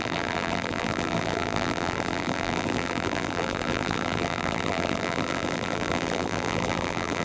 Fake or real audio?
fake